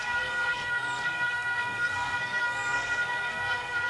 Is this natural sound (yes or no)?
no